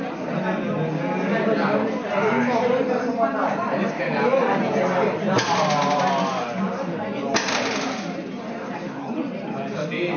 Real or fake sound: real